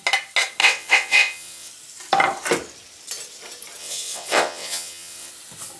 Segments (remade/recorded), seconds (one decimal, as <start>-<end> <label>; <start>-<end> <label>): 0.0-0.6 recorded; 0.6-1.7 remade; 1.7-3.8 recorded; 3.8-5.3 remade; 5.3-5.8 recorded

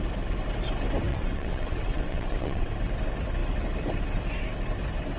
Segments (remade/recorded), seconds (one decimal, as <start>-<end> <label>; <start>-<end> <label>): 0.0-1.1 recorded; 1.1-2.7 remade; 2.7-5.2 recorded

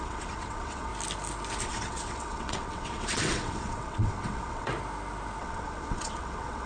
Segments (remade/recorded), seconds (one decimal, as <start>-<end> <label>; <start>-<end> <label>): 0.0-0.9 remade; 0.9-1.6 recorded; 1.6-4.7 remade; 4.7-5.4 recorded; 5.4-6.7 remade

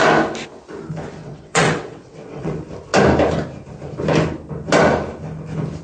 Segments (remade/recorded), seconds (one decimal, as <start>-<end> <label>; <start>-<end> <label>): 0.0-1.2 recorded; 1.2-2.5 remade; 2.5-5.8 recorded